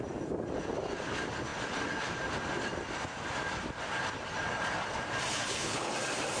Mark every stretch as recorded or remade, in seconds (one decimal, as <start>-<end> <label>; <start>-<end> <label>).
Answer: 0.0-5.3 recorded; 5.3-5.9 remade; 5.9-6.4 recorded